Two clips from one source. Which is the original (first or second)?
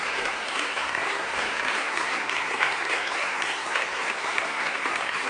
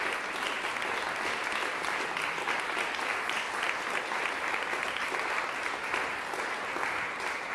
second